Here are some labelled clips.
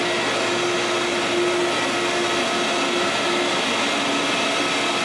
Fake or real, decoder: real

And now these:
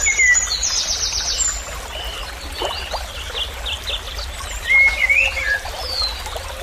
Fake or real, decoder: real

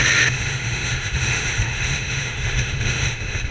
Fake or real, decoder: fake, autoencoder, DAC-VAE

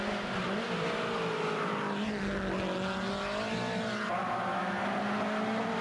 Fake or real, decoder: real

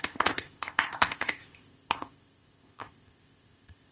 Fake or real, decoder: fake, codec, ZipCodec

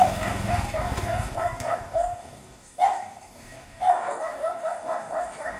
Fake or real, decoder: fake, codec, DAC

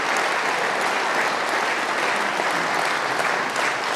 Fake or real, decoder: real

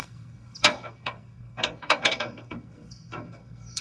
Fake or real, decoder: fake, codec, SNAC